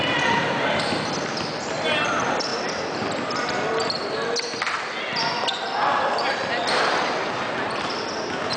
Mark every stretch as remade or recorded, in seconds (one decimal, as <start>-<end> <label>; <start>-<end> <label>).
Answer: 0.0-8.6 recorded